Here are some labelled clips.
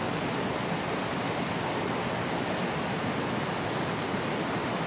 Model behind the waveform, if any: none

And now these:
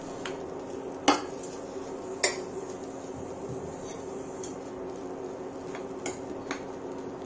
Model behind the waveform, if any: none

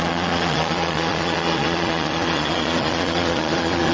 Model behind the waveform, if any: vocoder, Vocos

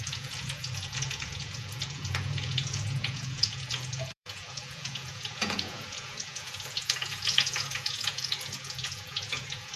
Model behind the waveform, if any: vocoder, Vocos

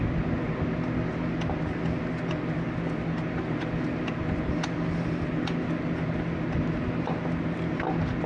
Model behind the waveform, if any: none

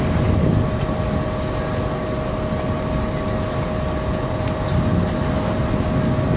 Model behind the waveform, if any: none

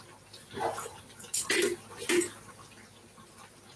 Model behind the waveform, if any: none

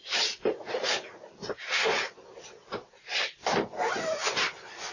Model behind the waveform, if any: none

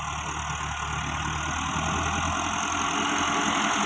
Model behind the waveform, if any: none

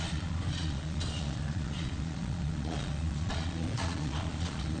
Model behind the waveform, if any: vocoder, Vocos